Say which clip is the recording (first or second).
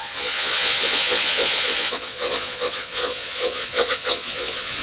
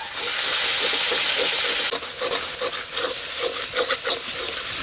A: second